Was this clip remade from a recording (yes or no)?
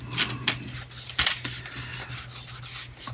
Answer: no